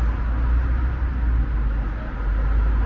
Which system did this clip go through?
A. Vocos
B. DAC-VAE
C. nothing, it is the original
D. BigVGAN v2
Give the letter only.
C